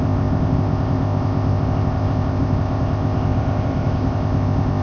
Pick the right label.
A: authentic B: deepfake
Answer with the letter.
B